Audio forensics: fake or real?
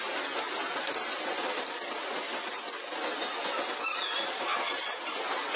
real